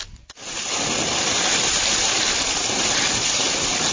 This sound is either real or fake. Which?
real